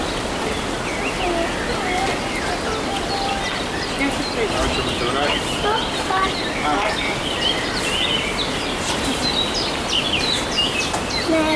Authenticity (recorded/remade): recorded